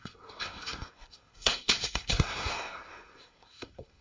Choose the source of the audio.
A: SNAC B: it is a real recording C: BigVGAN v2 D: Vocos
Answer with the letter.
A